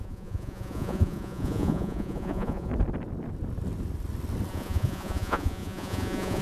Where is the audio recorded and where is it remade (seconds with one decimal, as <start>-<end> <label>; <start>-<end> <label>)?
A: 0.0-2.7 remade; 2.7-4.5 recorded; 4.5-6.4 remade